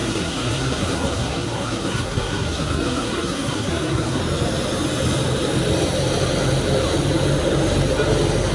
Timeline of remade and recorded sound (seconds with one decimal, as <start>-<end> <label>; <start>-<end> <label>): 0.0-4.2 remade; 4.2-8.5 recorded